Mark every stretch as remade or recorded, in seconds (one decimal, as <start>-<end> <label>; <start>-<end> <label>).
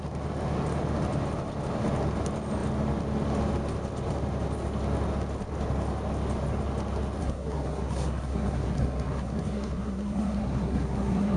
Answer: 0.0-7.2 recorded; 7.2-11.4 remade